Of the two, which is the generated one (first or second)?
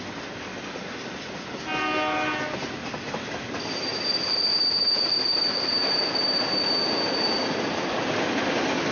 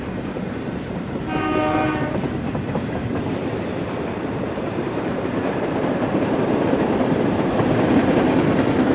second